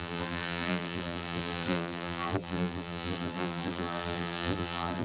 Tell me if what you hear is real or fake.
fake